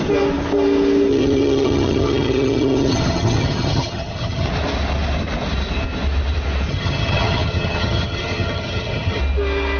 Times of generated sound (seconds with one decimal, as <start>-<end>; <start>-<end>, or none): 1.1-4.5; 6.7-9.2